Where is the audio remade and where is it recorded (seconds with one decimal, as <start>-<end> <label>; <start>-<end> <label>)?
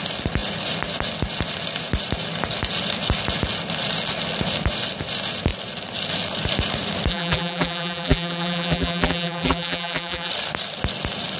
0.0-7.1 recorded; 7.1-10.3 remade; 10.3-11.4 recorded